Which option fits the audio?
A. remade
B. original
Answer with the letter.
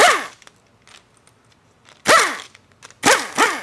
B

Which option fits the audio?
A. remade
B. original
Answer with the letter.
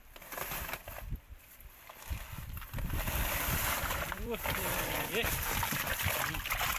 A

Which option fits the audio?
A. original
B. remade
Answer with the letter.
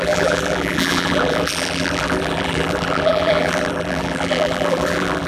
B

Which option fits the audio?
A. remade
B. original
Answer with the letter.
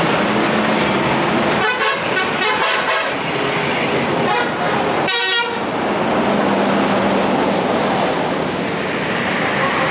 B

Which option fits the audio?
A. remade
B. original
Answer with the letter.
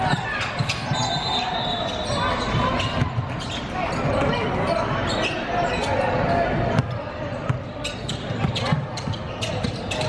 B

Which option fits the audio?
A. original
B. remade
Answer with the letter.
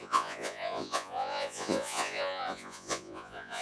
B